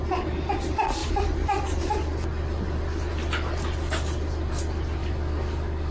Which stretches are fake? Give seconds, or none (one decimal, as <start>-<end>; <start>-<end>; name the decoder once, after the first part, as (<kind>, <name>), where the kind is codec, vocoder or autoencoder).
5.0-5.9 (codec, DAC)